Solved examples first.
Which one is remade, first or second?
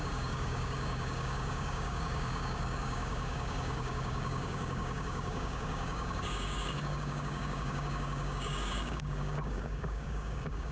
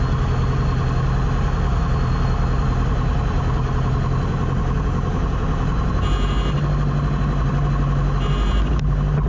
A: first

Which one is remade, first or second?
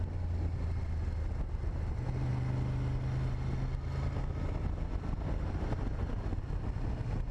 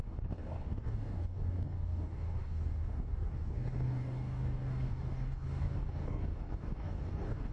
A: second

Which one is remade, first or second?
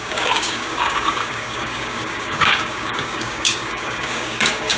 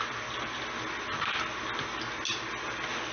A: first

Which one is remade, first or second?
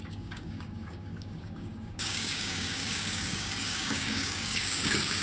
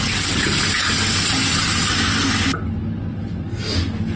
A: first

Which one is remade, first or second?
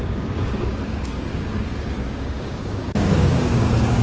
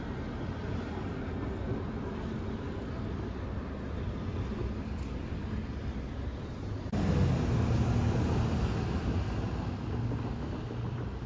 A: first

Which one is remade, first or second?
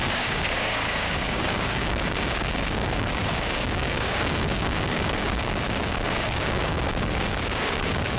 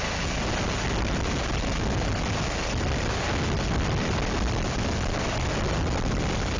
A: first